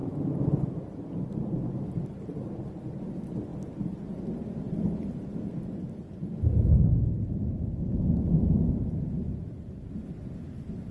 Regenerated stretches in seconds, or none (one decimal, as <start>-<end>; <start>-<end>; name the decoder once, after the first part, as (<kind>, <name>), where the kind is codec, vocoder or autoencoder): none